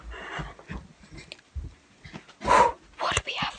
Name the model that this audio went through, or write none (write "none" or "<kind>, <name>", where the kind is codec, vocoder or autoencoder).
none